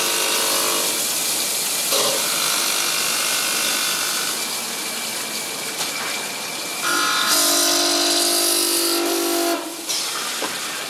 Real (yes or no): yes